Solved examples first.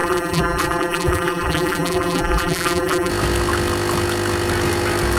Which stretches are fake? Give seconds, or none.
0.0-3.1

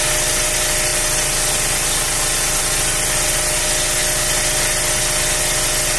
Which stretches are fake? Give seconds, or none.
none

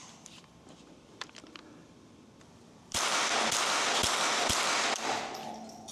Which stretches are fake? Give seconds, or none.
0.0-3.5

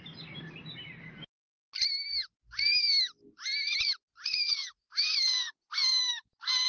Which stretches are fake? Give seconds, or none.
none

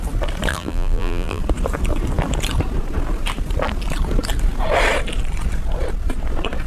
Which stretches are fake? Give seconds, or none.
0.5-1.4

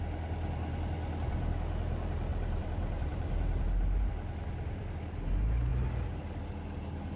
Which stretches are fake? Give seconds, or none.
2.3-4.1